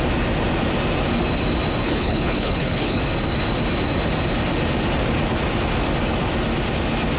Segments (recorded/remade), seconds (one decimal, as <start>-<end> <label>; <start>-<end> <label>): 0.0-1.8 recorded; 1.8-3.0 remade; 3.0-7.2 recorded